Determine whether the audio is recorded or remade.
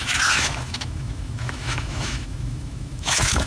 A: remade